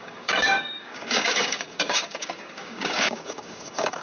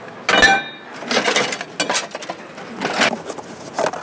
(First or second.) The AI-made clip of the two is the first